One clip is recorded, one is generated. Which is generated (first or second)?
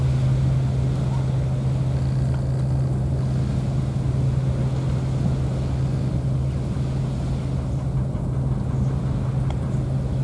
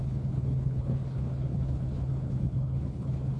second